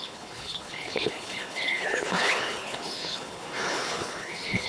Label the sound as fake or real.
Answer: fake